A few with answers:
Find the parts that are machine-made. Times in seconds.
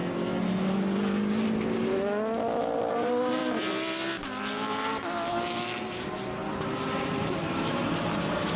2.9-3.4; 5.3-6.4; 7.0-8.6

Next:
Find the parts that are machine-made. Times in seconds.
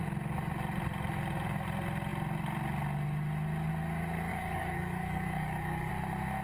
4.3-5.9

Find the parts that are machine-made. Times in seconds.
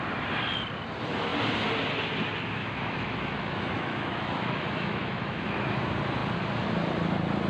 2.6-5.7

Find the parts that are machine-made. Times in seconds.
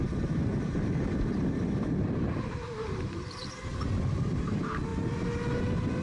0.0-3.5